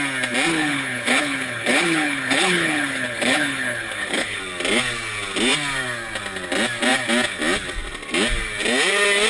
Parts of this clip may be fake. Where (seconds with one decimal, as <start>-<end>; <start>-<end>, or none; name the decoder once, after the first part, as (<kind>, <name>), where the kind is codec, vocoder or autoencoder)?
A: 0.5-4.4 (codec, HILCodec)